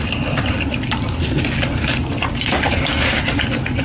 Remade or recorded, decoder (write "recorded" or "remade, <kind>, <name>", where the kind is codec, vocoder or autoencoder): recorded